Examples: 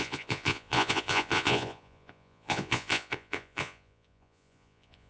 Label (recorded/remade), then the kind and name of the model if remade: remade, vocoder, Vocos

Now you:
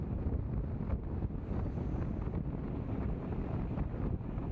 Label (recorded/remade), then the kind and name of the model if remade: recorded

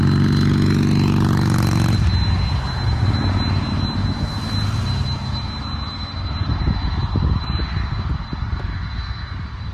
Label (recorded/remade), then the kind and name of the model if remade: recorded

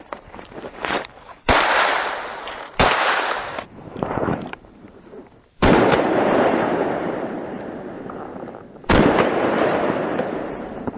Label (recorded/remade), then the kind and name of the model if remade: remade, vocoder, BigVGAN v2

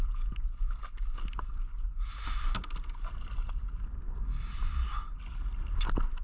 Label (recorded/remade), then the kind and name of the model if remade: recorded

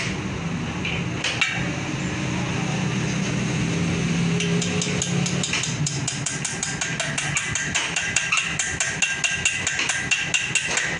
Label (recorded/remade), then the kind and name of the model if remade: recorded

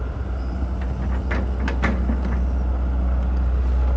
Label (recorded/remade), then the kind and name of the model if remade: recorded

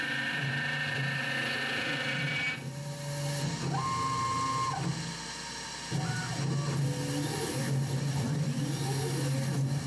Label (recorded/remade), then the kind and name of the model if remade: recorded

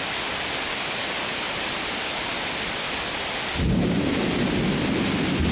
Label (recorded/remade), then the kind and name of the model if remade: recorded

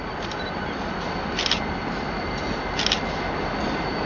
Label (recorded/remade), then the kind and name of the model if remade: recorded